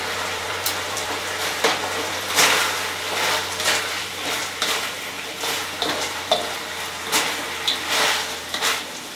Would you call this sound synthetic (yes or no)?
yes